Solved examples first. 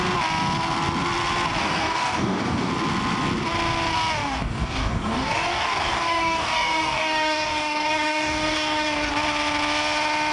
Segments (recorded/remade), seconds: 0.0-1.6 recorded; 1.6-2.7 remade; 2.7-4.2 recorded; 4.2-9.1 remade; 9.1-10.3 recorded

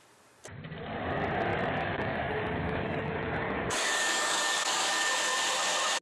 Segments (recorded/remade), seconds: 0.0-1.5 recorded; 1.5-5.1 remade; 5.1-6.0 recorded